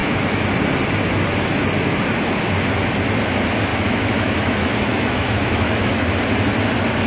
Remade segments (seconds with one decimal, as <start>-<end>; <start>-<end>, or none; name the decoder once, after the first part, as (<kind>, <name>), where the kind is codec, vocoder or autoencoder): 0.0-0.5 (autoencoder, DAC-VAE); 3.7-6.1